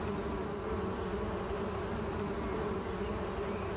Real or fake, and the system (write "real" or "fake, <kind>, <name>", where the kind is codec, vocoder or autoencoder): real